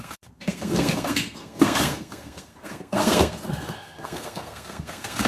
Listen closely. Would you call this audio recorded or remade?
remade